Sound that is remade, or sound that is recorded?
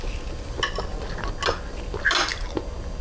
recorded